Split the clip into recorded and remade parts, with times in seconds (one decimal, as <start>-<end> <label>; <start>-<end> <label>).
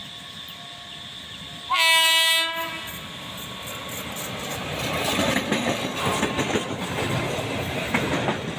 0.0-8.6 recorded